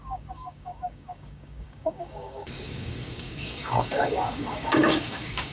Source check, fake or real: fake